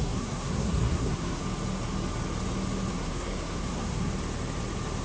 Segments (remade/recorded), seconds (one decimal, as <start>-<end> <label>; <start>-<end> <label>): 0.0-1.4 remade; 1.4-2.9 recorded; 2.9-4.1 remade; 4.1-5.0 recorded